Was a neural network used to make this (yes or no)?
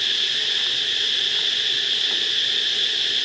no